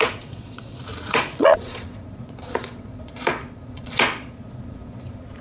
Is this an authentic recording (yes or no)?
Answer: no